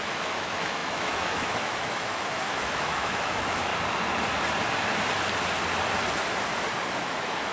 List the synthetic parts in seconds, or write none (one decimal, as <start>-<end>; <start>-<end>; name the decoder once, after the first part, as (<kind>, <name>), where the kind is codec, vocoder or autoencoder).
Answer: 0.0-3.7 (autoencoder, DAC-VAE); 7.0-7.5